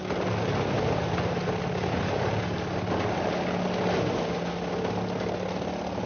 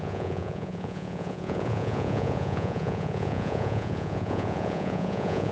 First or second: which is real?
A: first